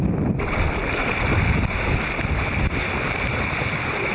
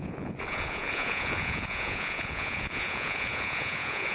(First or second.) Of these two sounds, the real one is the first